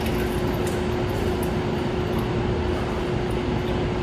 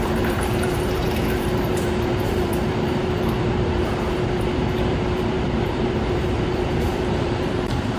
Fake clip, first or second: second